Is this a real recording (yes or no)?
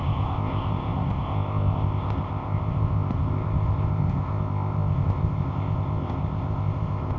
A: no